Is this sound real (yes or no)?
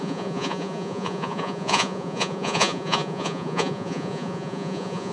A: no